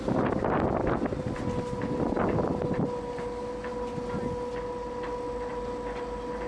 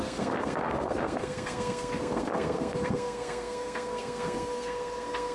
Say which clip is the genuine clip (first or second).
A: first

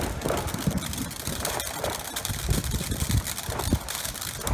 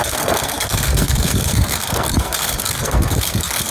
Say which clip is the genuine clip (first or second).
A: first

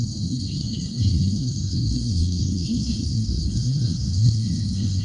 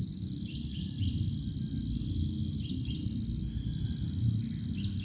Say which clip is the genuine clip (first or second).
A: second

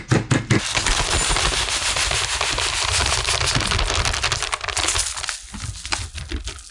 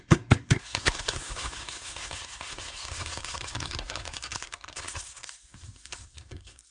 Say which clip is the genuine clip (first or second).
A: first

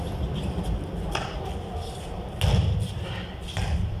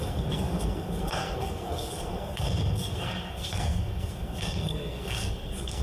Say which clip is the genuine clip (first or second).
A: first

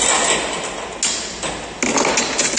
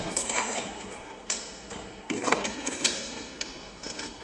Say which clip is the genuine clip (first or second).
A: first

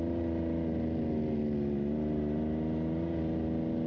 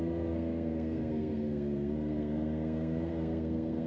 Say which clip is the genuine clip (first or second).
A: first